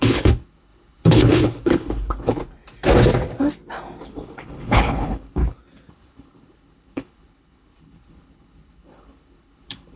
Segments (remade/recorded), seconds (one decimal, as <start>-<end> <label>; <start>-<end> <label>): 0.0-2.4 remade; 2.4-4.1 recorded; 4.1-5.4 remade; 5.4-5.9 recorded; 5.9-10.0 remade